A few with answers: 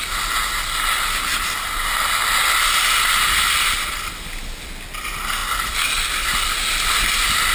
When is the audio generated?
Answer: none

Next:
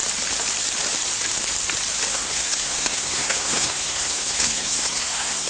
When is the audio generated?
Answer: 2.1-5.5 (codec, SNAC)

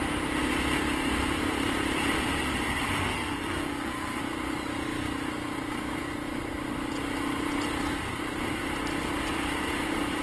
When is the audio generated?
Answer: 3.0-4.2 (codec, SNAC)

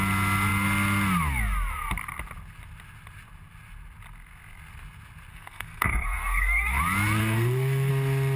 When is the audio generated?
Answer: 5.3-6.8 (codec, SNAC); 7.2-7.9

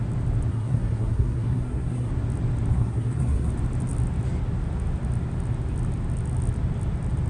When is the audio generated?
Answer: 0.5-2.1 (codec, SNAC); 2.7-3.5